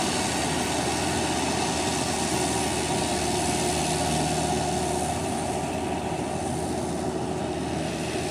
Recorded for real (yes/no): yes